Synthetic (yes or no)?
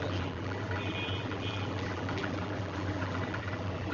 yes